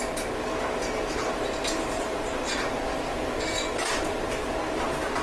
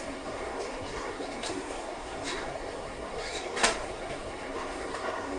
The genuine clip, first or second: first